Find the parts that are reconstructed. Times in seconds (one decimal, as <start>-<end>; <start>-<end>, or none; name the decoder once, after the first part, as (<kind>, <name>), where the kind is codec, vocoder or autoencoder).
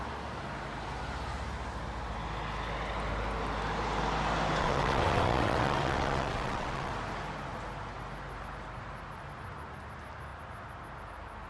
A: 4.6-6.9 (vocoder, WaveNeXt)